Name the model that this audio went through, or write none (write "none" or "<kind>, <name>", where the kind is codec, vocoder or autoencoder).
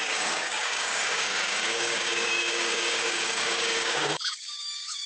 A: codec, DAC